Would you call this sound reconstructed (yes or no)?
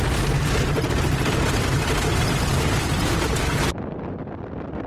no